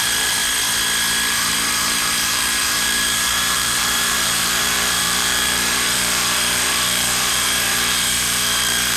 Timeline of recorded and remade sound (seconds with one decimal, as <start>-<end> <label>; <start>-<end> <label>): 0.0-0.4 remade; 0.4-1.3 recorded; 1.3-9.0 remade